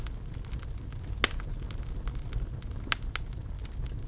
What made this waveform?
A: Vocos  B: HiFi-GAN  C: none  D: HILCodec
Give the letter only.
C